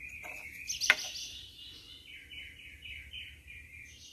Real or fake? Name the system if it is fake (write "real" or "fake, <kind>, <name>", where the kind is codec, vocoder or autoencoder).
real